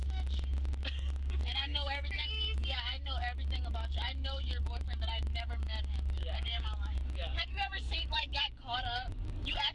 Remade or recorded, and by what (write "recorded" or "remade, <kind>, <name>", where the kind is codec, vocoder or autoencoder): remade, codec, DAC